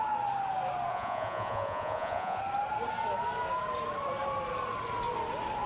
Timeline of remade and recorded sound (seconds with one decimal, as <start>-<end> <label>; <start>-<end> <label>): 0.0-0.9 recorded; 0.9-2.4 remade; 2.4-5.7 recorded